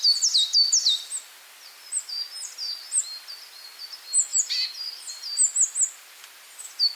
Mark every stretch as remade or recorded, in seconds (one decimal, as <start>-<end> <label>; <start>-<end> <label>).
0.0-7.0 recorded